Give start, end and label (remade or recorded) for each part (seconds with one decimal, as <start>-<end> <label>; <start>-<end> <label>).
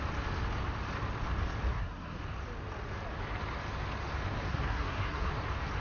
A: 0.0-1.7 recorded; 1.7-2.2 remade; 2.2-4.5 recorded; 4.5-5.3 remade; 5.3-5.8 recorded